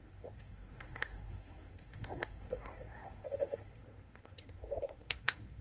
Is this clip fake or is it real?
fake